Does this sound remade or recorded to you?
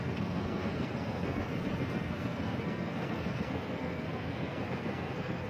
remade